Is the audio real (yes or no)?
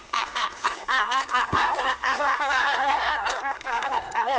no